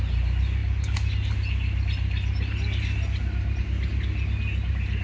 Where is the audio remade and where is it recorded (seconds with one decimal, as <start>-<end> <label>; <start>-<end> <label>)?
0.0-5.0 recorded